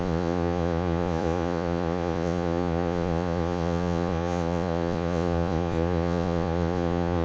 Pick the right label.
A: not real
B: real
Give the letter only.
A